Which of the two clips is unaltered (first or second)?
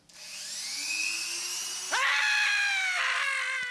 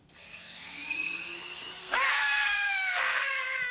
first